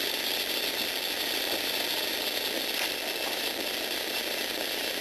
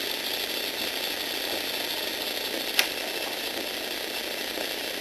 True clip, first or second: second